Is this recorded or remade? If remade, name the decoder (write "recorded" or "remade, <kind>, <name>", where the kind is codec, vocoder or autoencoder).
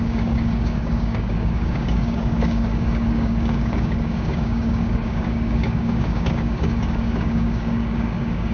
remade, codec, DAC